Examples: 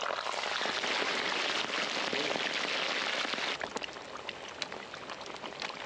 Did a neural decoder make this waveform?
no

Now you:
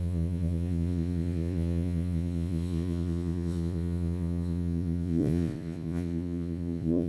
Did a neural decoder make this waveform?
yes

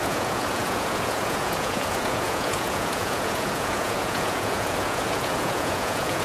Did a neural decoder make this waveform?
yes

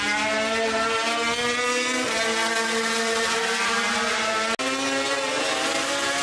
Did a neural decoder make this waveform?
no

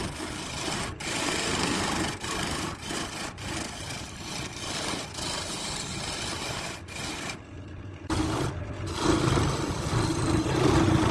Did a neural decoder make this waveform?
no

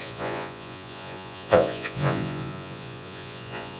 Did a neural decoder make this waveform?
yes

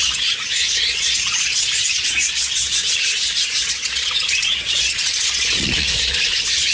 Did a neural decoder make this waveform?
yes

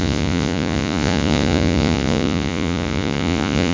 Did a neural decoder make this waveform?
yes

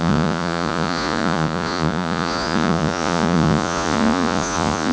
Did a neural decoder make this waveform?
yes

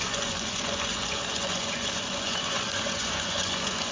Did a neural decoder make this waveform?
yes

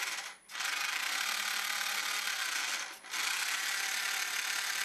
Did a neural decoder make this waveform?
no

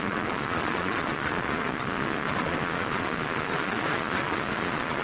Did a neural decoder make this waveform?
yes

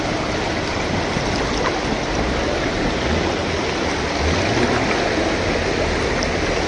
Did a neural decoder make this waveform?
no